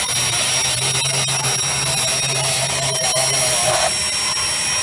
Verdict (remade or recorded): recorded